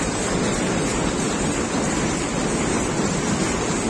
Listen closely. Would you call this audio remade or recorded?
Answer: recorded